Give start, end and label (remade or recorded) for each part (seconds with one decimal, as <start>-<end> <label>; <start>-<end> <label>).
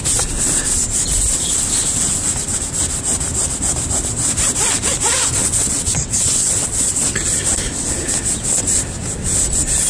0.0-5.3 recorded; 5.3-6.9 remade; 6.9-9.9 recorded